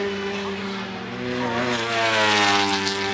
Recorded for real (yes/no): yes